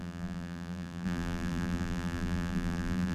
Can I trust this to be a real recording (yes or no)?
no